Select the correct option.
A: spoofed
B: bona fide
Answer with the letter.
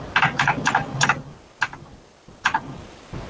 B